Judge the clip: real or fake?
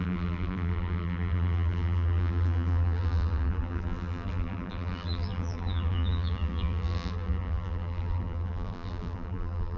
fake